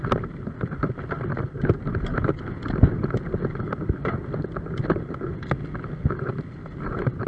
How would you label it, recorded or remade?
recorded